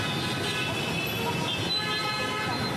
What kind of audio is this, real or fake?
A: real